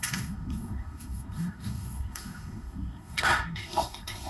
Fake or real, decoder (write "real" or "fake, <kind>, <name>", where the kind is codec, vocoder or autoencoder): fake, codec, SNAC